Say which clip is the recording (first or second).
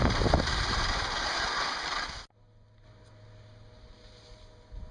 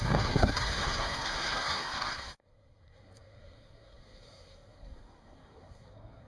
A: first